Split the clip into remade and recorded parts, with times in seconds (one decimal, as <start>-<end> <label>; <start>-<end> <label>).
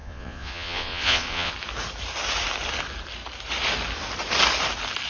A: 0.0-1.5 remade; 1.5-5.1 recorded